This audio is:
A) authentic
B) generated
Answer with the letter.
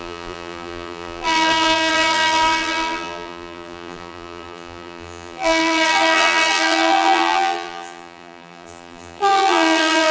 B